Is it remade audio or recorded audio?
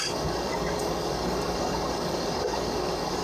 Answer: remade